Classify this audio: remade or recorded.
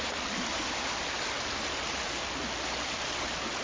recorded